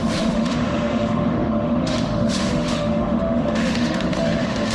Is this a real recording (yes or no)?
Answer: no